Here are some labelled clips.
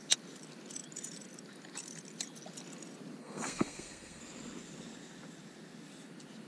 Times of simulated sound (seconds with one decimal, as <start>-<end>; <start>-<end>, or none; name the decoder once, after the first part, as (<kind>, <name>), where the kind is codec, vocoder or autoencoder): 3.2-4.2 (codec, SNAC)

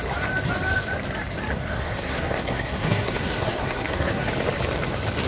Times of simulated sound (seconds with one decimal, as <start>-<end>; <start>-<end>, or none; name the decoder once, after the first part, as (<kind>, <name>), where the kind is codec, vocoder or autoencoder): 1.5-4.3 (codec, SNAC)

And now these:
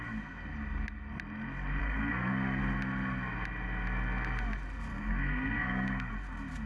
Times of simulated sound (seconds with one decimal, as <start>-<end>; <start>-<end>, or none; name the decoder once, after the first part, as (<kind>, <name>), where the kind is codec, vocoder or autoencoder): 1.8-2.6 (codec, SNAC); 4.9-6.1

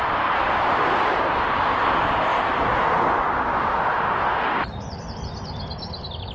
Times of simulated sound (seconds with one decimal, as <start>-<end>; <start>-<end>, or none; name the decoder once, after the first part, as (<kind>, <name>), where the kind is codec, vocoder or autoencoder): none

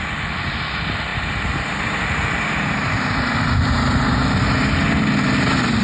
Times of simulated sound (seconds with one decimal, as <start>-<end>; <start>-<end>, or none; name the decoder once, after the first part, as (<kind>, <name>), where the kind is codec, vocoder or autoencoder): 1.1-4.4 (vocoder, BigVGAN v2)